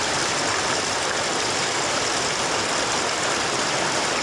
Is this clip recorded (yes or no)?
no